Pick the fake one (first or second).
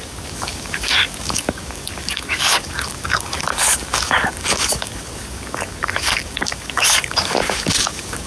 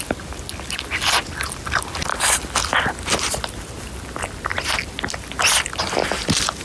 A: first